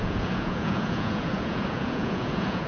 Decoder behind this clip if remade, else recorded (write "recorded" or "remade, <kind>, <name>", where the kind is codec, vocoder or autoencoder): remade, vocoder, Vocos